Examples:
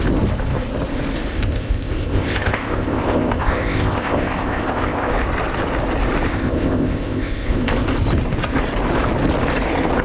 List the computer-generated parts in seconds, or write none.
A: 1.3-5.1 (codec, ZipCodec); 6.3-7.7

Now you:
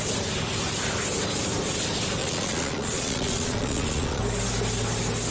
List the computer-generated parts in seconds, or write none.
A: 2.2-4.2 (vocoder, Vocos)

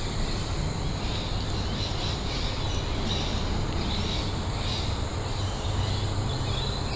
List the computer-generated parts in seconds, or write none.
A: none

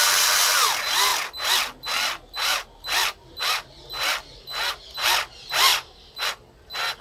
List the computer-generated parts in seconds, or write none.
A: none